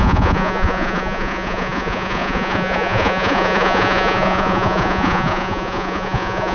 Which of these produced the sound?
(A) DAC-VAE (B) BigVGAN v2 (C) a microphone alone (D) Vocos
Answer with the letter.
D